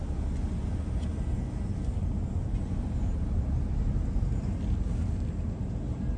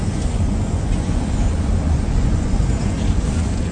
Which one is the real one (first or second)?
first